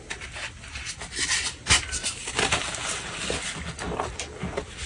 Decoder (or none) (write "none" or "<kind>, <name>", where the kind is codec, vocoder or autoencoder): none